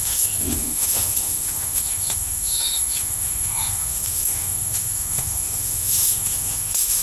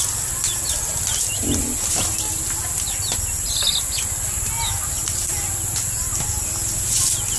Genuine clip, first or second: second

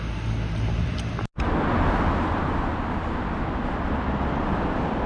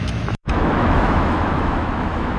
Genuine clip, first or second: first